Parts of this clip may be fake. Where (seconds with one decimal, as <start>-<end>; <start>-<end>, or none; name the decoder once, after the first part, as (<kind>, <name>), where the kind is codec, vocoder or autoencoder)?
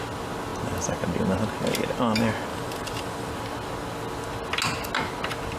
2.5-3.3 (vocoder, BigVGAN v2)